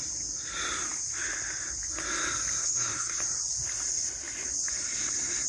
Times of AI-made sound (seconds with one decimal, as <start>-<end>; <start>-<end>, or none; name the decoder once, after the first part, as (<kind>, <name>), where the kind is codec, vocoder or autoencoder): 2.6-3.2 (codec, SNAC)